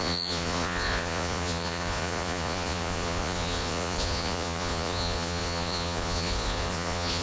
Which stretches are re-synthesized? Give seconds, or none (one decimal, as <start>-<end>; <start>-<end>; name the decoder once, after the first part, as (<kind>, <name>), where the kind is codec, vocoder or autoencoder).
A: 0.0-7.2 (vocoder, Vocos)